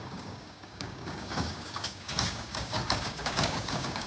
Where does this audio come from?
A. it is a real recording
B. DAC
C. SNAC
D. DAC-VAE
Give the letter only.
B